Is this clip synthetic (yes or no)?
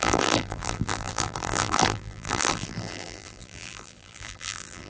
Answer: yes